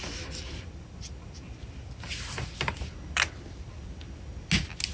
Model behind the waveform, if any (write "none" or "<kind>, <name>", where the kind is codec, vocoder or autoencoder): none